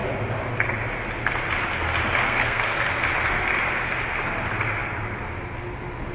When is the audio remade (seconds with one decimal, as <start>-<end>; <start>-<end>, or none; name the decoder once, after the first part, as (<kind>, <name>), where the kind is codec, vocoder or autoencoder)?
2.2-2.7 (codec, SNAC)